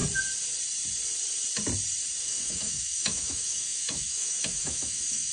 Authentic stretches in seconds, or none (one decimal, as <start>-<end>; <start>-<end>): 0.0-2.2